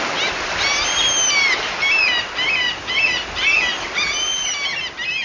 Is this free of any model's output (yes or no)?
yes